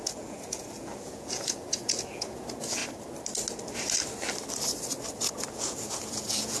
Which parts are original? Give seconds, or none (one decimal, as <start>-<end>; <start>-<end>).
2.8-5.5